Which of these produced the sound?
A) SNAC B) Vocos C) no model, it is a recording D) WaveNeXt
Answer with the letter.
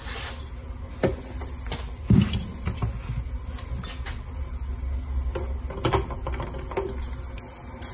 C